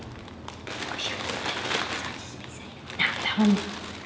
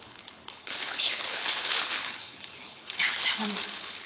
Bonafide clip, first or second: first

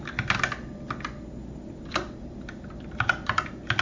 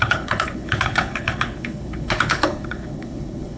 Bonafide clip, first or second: first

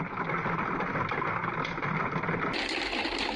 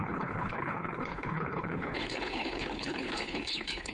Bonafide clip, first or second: first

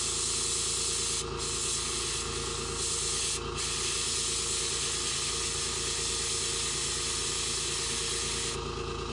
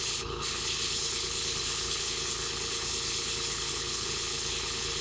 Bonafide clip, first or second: first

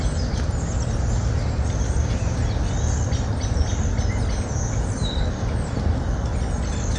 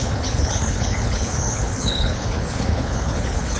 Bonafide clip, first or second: first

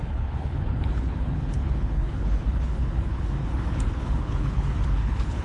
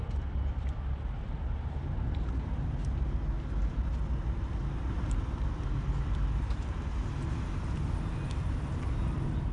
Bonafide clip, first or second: second